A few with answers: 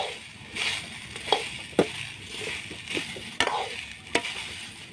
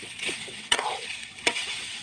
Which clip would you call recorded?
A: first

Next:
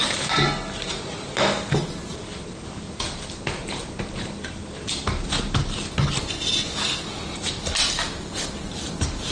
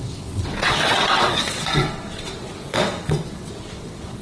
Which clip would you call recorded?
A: first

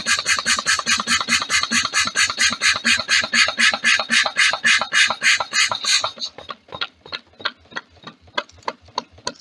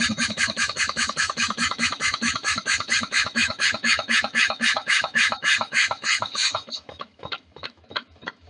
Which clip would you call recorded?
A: first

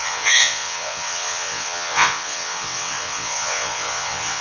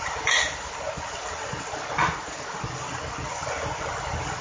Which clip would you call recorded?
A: second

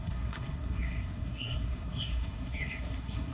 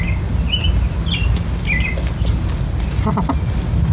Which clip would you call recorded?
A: second